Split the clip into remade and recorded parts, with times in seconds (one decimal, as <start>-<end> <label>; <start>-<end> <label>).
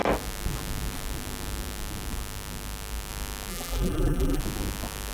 0.0-3.5 recorded; 3.5-4.4 remade; 4.4-5.1 recorded